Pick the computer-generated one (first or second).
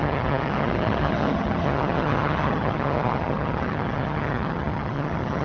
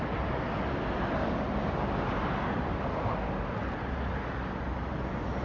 first